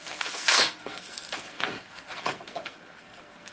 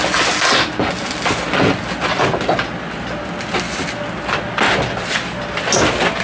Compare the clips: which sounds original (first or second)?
second